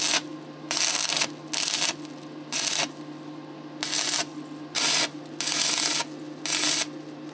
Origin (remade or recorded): recorded